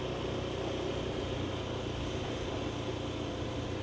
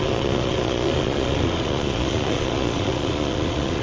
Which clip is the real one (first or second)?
first